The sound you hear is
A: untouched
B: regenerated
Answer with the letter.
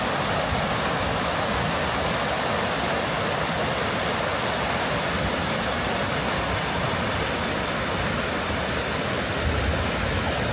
A